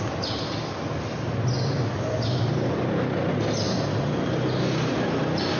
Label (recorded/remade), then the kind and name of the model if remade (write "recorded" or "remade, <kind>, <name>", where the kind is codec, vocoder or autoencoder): recorded